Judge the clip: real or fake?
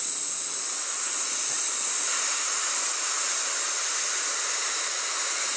real